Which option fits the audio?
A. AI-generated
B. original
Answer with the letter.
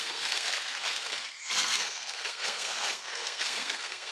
A